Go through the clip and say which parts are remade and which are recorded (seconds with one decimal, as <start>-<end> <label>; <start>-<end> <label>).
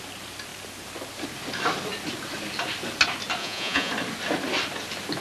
0.0-3.4 recorded; 3.4-3.9 remade; 3.9-5.2 recorded